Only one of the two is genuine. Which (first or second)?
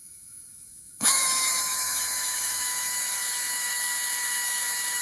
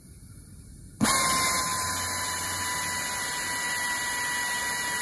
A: second